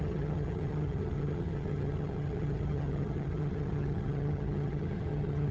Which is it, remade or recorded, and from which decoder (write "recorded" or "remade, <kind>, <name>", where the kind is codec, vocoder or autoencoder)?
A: remade, vocoder, HiFi-GAN